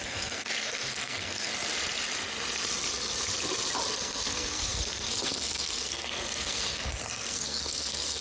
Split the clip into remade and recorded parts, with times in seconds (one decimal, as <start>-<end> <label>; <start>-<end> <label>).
0.0-1.5 remade; 1.5-3.9 recorded; 3.9-8.2 remade